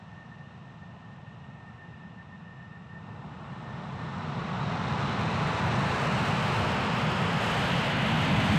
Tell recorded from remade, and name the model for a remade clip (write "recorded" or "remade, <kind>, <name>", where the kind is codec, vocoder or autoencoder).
recorded